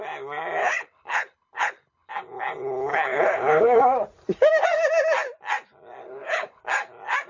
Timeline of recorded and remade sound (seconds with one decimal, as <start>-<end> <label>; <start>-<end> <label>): 0.0-0.6 recorded; 0.6-2.1 remade; 2.1-2.9 recorded; 2.9-3.8 remade; 3.8-6.0 recorded; 6.0-6.6 remade; 6.6-7.3 recorded